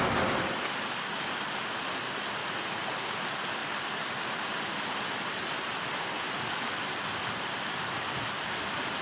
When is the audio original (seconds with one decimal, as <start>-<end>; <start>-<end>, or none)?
0.0-2.4; 2.9-9.0